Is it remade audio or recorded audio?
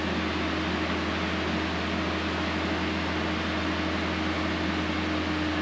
recorded